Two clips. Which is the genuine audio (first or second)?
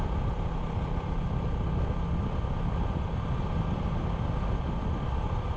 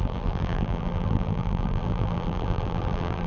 first